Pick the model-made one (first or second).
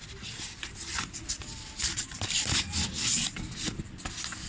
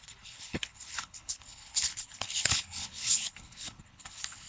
second